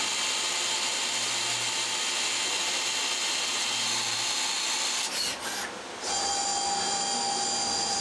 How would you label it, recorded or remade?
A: recorded